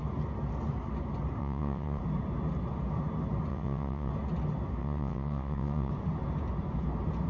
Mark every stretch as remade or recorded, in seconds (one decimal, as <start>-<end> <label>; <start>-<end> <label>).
0.0-1.4 recorded; 1.4-2.0 remade; 2.0-3.5 recorded; 3.5-4.1 remade; 4.1-4.8 recorded; 4.8-5.9 remade; 5.9-7.3 recorded